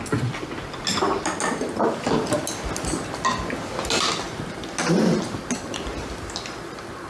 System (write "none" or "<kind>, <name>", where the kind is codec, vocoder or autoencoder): none